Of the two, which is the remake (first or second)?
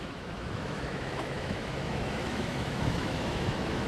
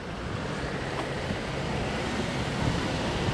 first